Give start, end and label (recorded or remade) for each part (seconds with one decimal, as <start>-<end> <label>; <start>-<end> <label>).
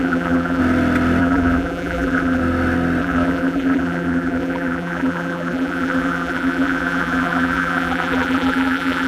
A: 0.0-0.6 remade; 0.6-1.2 recorded; 1.2-2.4 remade; 2.4-3.0 recorded; 3.0-9.1 remade